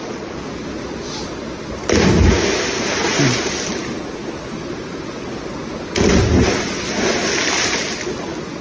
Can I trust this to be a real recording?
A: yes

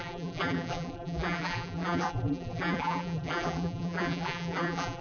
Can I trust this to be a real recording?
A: no